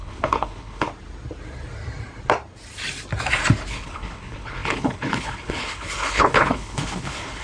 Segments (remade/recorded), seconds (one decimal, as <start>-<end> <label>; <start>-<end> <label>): 0.0-0.9 remade; 0.9-3.7 recorded; 3.7-7.4 remade